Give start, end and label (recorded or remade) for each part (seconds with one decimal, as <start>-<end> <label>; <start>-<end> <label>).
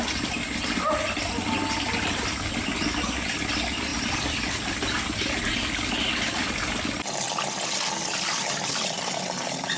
0.0-3.9 recorded; 3.9-5.5 remade; 5.5-9.8 recorded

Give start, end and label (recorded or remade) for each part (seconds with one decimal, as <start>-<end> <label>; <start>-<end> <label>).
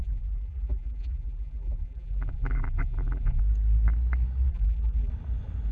0.0-3.4 remade; 3.4-4.5 recorded; 4.5-5.1 remade; 5.1-5.7 recorded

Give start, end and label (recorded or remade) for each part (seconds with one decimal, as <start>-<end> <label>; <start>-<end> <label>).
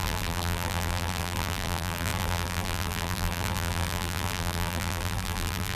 0.0-5.8 remade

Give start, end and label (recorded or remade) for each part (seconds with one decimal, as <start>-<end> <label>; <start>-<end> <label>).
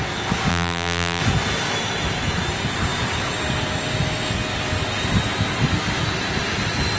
0.0-0.5 recorded; 0.5-1.2 remade; 1.2-7.0 recorded